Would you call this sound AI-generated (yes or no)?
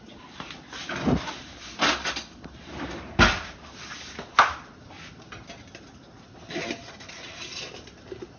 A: no